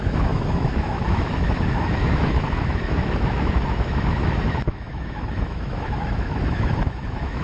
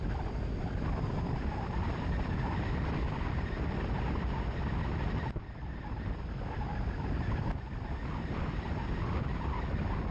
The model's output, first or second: first